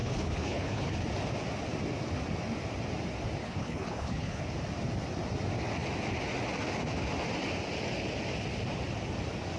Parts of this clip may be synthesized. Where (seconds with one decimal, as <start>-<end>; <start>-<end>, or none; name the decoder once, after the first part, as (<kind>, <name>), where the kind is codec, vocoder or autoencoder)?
0.0-1.0 (codec, HILCodec); 3.4-4.4